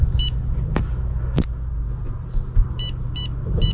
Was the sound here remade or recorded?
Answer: recorded